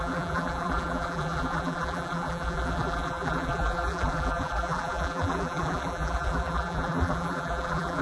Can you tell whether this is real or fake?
fake